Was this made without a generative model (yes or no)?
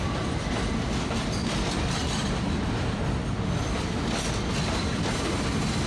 yes